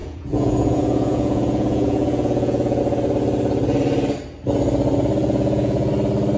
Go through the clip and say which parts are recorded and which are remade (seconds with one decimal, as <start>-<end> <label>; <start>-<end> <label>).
0.0-2.8 remade; 2.8-5.2 recorded; 5.2-5.9 remade; 5.9-6.4 recorded